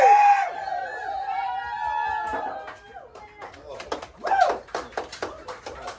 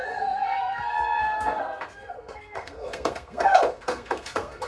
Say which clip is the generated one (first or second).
second